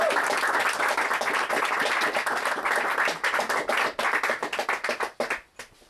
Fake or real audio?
real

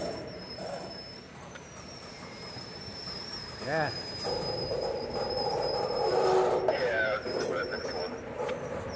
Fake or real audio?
fake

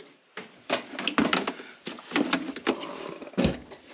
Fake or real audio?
real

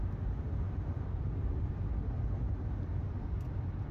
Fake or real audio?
real